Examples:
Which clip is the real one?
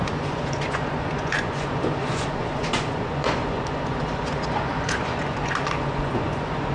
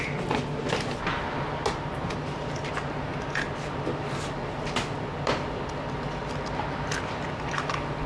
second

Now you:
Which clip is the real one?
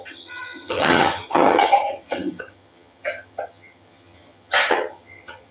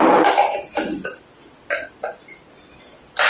second